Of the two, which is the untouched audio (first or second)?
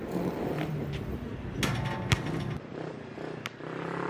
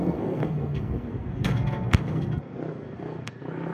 first